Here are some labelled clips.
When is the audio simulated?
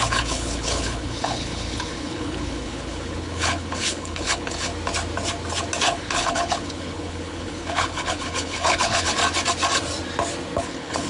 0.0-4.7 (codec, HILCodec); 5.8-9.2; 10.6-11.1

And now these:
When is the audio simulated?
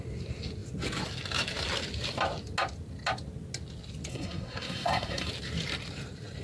4.1-5.3 (codec, SNAC)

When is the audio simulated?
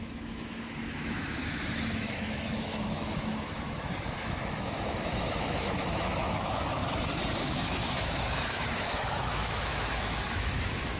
0.0-6.8 (autoencoder, DAC-VAE); 7.4-11.0